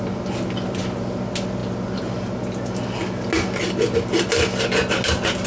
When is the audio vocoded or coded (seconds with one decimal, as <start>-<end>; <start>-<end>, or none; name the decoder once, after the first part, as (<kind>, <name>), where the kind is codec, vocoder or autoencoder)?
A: none